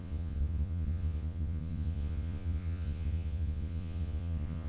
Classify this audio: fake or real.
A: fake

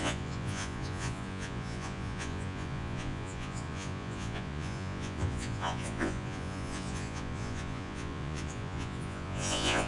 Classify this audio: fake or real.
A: fake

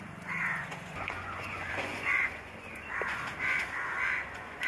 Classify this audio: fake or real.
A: fake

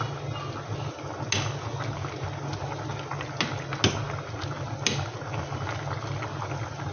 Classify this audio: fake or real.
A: real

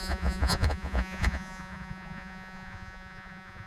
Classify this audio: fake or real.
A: fake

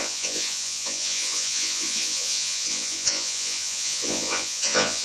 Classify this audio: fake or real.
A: fake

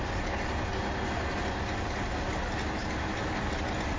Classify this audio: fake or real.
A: real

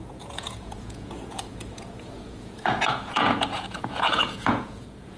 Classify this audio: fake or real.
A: fake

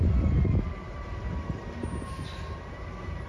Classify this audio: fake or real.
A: real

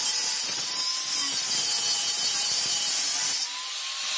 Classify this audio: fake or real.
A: real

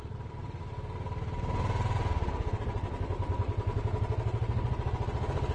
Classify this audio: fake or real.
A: real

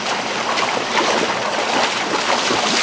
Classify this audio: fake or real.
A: real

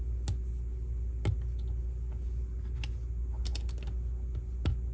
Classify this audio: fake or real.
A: real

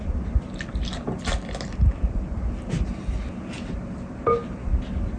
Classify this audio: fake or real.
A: real